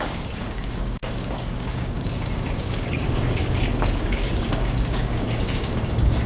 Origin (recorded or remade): remade